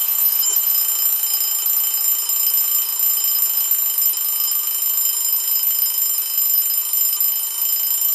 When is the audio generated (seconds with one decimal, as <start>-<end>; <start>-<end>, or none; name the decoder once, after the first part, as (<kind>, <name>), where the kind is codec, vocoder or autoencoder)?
0.0-0.7 (autoencoder, DAC-VAE)